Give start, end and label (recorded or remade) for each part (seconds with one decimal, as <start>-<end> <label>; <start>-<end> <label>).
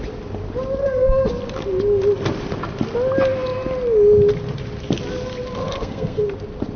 0.0-0.8 recorded; 0.8-1.3 remade; 1.3-5.6 recorded; 5.6-6.2 remade; 6.2-6.8 recorded